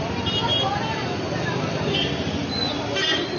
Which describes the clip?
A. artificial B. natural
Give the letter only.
B